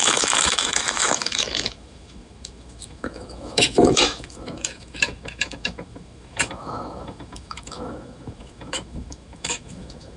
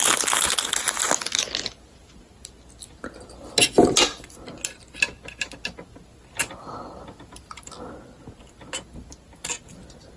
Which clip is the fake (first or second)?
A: first